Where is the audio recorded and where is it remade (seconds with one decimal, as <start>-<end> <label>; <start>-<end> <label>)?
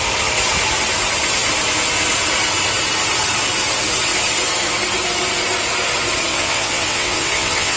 0.0-6.3 recorded; 6.3-7.8 remade